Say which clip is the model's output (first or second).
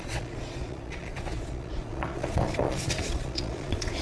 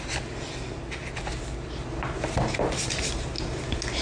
first